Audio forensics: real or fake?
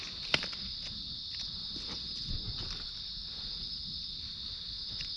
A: real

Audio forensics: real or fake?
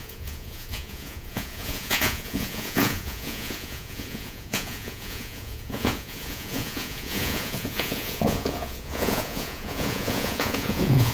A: fake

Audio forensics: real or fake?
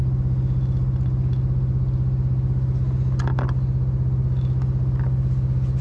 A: real